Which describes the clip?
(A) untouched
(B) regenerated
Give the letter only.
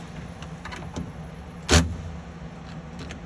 A